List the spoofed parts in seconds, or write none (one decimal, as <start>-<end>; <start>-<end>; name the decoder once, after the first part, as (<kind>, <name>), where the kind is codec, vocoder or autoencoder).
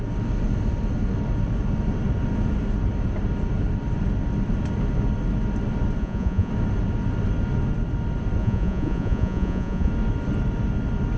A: 6.0-6.5 (vocoder, Vocos); 8.4-9.9